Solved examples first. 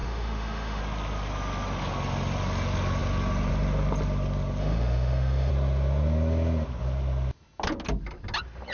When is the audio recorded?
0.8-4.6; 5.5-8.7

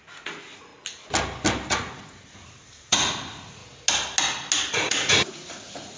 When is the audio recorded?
0.7-1.7; 3.6-4.7